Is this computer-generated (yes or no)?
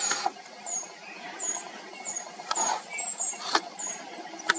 yes